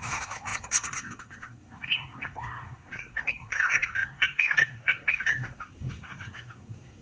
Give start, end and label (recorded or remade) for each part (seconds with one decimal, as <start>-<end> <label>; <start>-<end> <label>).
0.0-7.0 remade